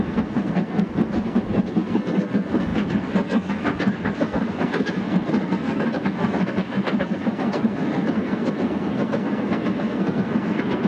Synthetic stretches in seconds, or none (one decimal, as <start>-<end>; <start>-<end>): 0.0-10.9